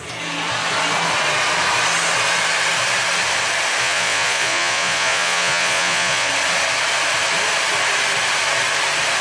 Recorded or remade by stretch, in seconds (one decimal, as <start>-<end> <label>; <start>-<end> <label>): 0.0-3.8 recorded; 3.8-6.3 remade; 6.3-9.2 recorded